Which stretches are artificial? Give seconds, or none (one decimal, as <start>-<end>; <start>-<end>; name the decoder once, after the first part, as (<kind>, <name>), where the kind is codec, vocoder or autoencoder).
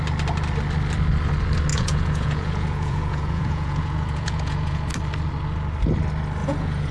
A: 1.7-4.9 (vocoder, Vocos); 6.4-6.9